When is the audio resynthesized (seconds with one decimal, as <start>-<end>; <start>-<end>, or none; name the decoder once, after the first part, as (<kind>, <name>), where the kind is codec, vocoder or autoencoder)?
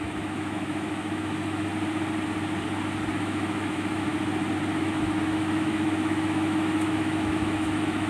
0.0-1.7 (autoencoder, DAC-VAE); 3.2-4.1; 4.8-8.1